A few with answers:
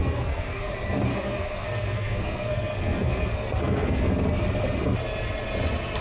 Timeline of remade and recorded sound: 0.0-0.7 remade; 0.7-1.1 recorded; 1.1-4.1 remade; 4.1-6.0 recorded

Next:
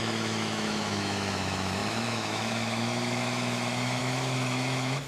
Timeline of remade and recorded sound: 0.0-5.1 remade

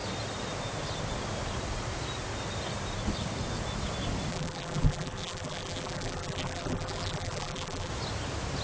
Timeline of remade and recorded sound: 0.0-4.3 recorded; 4.3-7.9 remade; 7.9-8.6 recorded